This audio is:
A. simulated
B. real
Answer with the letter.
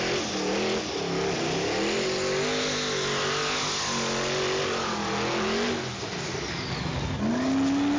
B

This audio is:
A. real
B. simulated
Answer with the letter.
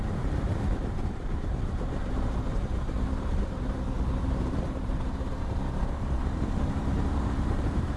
B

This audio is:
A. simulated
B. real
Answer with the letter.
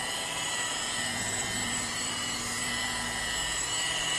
A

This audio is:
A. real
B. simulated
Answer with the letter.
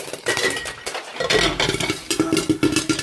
A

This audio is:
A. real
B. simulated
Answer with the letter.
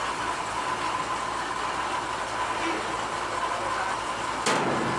A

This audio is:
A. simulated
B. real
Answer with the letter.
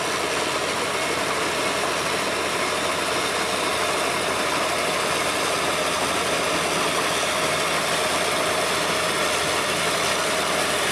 B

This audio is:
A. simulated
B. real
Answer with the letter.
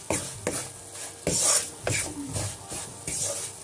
B